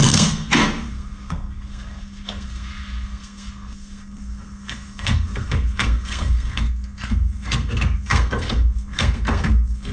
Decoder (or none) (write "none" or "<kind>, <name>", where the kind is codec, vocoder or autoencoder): codec, SNAC